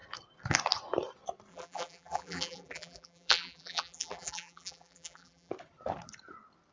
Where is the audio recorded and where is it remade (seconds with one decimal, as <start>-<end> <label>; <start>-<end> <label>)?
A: 0.0-1.5 recorded; 1.5-5.5 remade; 5.5-6.7 recorded